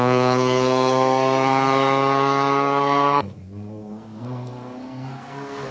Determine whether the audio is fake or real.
fake